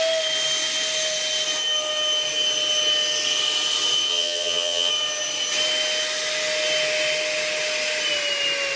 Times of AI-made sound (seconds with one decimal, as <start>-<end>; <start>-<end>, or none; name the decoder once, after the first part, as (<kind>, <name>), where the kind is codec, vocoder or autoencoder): 4.1-4.9 (vocoder, HiFi-GAN)